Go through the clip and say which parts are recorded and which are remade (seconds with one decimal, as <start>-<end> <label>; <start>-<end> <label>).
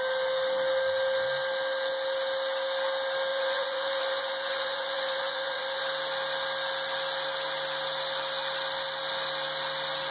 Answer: 0.0-3.3 recorded; 3.3-5.8 remade; 5.8-10.1 recorded